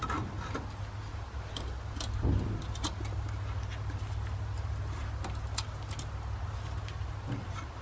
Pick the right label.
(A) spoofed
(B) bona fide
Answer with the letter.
B